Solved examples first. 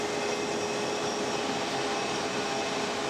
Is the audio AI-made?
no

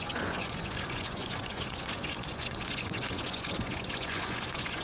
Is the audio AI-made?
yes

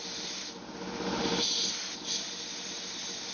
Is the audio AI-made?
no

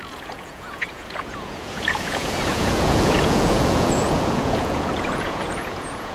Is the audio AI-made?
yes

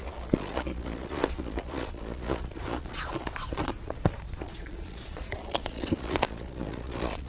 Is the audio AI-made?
yes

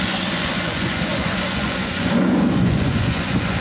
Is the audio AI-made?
yes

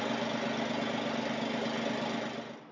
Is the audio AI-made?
no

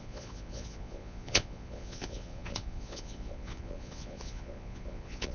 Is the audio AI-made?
yes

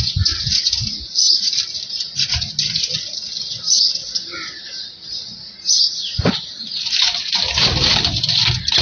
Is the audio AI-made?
no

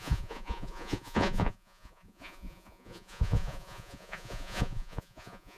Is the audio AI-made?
yes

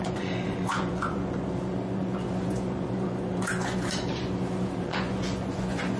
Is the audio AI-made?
yes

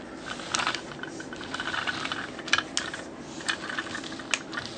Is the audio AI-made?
no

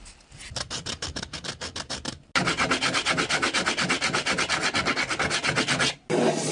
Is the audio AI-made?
no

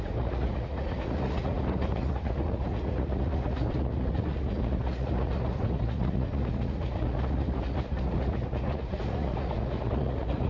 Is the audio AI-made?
yes